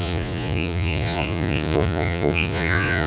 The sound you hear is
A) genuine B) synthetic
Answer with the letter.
B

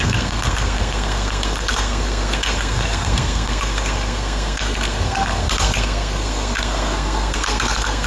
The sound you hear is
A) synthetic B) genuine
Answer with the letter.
A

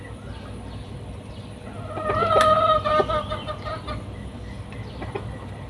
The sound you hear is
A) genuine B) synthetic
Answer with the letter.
A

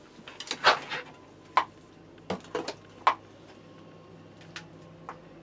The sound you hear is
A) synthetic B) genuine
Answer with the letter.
B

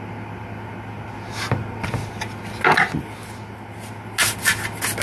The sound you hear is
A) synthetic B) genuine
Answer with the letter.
B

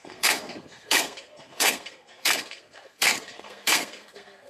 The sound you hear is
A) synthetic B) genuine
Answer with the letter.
A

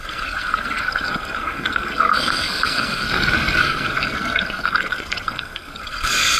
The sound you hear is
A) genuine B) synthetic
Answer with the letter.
B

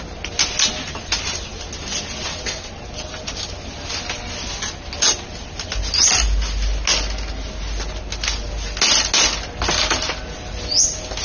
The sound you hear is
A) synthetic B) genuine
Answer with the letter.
B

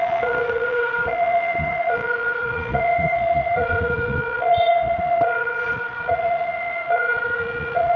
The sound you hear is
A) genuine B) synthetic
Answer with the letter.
B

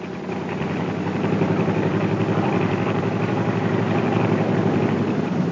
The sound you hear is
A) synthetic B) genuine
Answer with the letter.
A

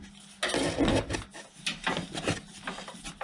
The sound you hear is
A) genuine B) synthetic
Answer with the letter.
A